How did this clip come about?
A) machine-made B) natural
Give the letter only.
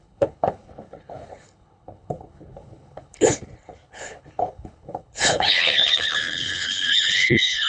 A